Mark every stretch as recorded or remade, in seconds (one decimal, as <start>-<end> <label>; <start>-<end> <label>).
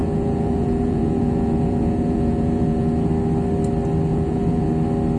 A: 0.0-3.1 remade; 3.1-4.1 recorded; 4.1-4.7 remade; 4.7-5.2 recorded